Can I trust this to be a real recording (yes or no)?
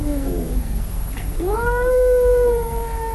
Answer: no